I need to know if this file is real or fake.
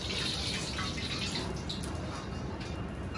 real